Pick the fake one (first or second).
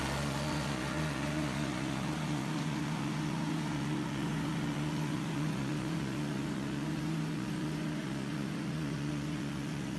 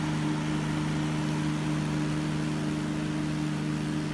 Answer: first